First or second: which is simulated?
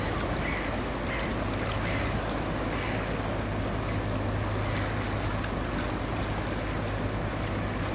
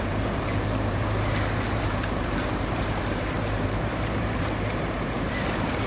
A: second